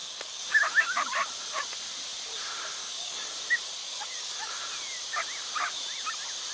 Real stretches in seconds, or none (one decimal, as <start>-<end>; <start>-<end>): 0.6-2.8; 3.3-3.8; 4.5-6.5